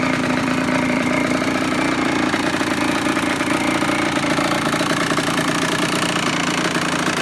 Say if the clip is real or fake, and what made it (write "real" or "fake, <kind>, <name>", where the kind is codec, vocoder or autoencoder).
fake, vocoder, BigVGAN v2